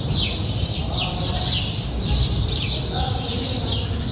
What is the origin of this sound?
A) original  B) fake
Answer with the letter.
A